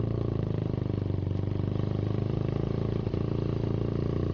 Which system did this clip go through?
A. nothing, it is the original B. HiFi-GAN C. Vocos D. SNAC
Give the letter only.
A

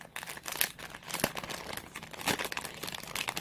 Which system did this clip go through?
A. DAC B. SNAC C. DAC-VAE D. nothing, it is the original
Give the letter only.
D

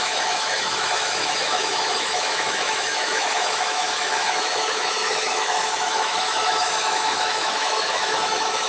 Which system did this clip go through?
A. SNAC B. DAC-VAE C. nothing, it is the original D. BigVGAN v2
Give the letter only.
B